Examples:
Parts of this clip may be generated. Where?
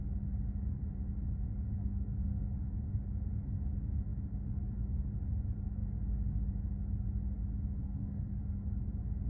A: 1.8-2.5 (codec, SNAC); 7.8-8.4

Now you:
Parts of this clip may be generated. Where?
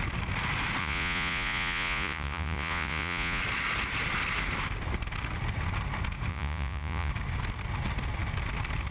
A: 0.8-3.4 (vocoder, Vocos); 6.3-7.1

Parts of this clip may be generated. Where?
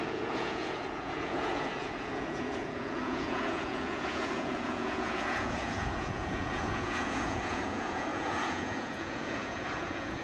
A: 0.0-10.2 (vocoder, Vocos)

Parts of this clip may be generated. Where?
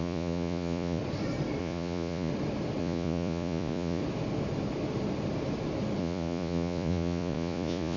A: 0.0-1.0 (vocoder, Vocos); 1.6-2.3; 2.8-4.0; 6.0-8.0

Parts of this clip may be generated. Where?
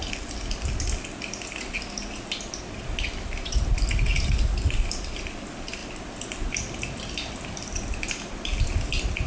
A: none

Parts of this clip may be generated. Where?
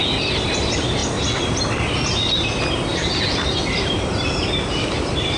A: none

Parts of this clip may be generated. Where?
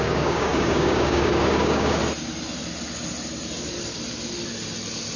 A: 0.0-2.0 (codec, DAC)